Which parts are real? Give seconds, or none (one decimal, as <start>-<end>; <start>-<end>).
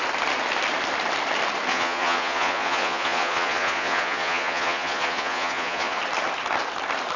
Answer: 0.0-1.7; 6.0-7.2